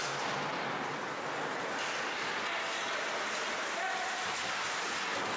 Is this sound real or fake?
real